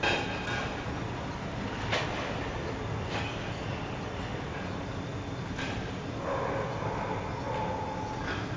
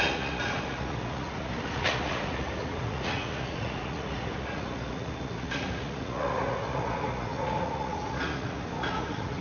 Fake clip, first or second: second